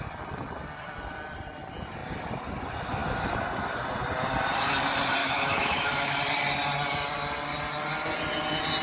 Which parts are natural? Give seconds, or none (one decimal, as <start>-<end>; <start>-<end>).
0.0-5.2; 6.2-8.8